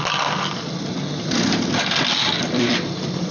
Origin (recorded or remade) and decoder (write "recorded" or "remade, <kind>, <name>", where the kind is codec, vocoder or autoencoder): recorded